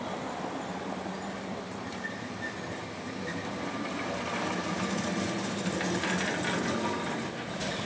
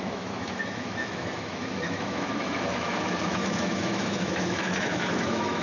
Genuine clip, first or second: first